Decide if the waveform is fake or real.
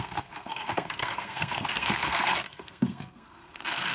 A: fake